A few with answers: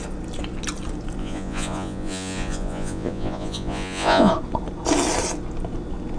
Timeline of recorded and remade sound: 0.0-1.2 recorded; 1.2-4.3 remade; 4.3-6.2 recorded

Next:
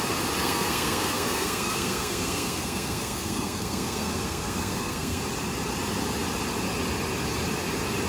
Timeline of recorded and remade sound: 0.0-0.4 recorded; 0.4-5.2 remade; 5.2-8.1 recorded

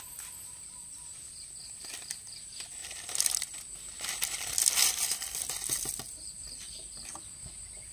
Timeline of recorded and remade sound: 0.0-2.8 recorded; 2.8-5.4 remade; 5.4-7.9 recorded

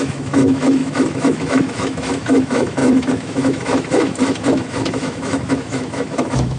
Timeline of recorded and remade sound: 0.0-6.6 remade

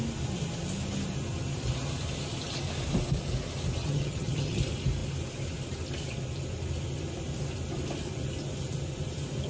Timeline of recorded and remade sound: 0.0-3.8 recorded; 3.8-4.6 remade; 4.6-9.5 recorded

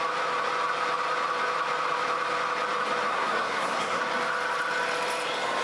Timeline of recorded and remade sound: 0.0-3.1 recorded; 3.1-4.0 remade; 4.0-5.6 recorded

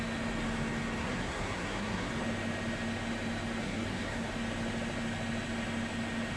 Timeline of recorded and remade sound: 0.0-1.0 recorded; 1.0-2.1 remade; 2.1-3.6 recorded; 3.6-4.3 remade; 4.3-6.4 recorded